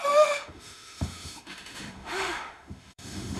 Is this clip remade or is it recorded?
remade